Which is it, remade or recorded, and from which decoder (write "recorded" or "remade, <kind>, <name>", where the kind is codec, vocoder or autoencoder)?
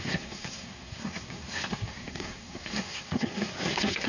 remade, codec, SNAC